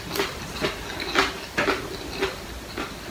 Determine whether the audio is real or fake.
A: real